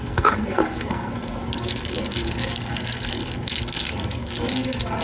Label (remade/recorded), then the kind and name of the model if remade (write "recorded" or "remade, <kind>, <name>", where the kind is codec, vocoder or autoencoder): remade, codec, SNAC